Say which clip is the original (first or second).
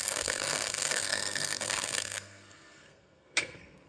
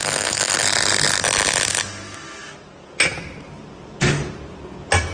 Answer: second